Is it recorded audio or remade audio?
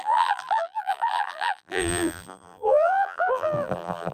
remade